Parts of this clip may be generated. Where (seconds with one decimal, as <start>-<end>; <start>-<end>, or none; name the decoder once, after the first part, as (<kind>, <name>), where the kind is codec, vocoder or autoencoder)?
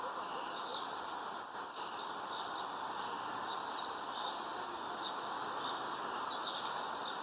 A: none